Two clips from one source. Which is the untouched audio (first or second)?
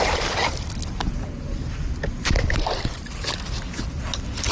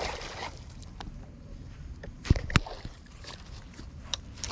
first